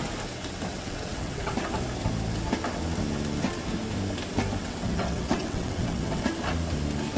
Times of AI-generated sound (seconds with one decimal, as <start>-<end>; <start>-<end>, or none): 0.7-1.5; 4.6-6.2